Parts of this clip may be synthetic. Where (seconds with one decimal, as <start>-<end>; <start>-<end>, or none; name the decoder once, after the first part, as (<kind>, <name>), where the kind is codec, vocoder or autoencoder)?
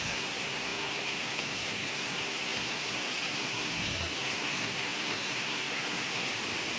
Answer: 0.0-6.3 (codec, SNAC)